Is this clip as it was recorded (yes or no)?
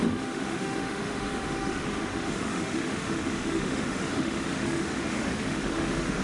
no